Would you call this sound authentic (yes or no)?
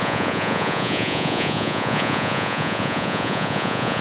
no